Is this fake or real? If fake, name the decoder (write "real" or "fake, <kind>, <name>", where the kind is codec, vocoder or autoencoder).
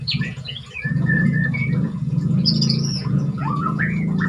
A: fake, vocoder, Vocos